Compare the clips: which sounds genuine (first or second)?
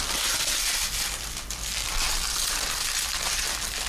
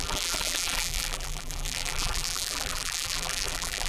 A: first